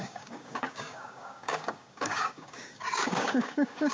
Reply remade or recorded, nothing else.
remade